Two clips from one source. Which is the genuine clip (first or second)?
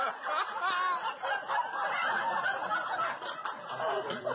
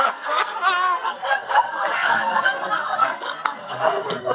first